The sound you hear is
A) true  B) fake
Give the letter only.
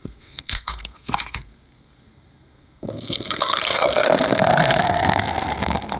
B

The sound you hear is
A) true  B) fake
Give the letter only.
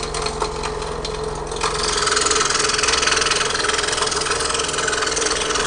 A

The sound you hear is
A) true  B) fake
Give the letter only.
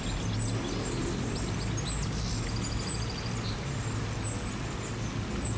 A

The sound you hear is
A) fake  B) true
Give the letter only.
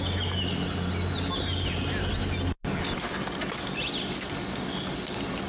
B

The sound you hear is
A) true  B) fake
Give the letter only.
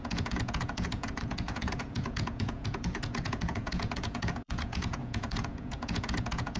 B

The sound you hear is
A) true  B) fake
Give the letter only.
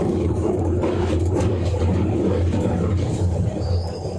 B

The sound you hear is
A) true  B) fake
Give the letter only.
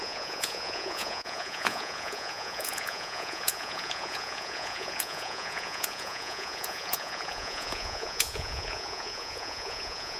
B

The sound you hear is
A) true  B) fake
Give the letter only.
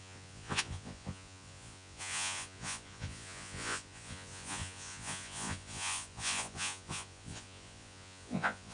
B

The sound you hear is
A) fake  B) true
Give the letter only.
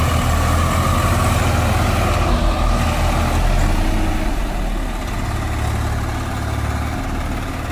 B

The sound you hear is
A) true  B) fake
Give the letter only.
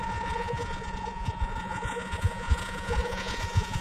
B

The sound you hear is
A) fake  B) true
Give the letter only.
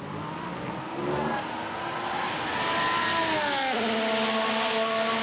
B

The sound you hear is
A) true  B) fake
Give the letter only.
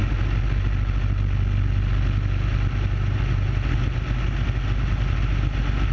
A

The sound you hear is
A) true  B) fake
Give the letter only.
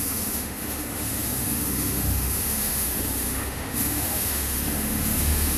B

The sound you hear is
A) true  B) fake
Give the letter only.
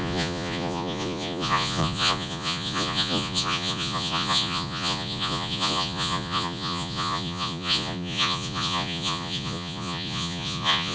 B